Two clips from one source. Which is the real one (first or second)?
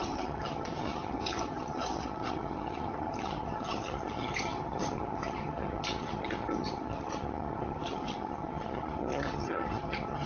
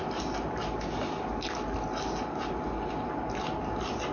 second